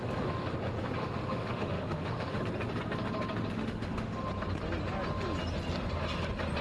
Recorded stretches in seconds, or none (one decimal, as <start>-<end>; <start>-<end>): 0.0-1.0; 2.4-3.6; 4.3-6.6